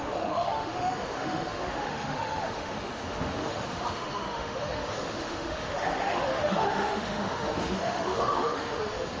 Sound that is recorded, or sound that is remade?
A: remade